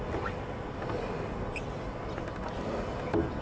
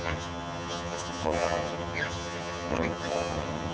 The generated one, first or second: second